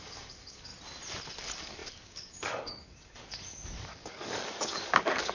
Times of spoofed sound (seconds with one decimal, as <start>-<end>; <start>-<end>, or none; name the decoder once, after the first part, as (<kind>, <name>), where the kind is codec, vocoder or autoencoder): 0.0-0.7 (codec, DAC); 1.4-5.3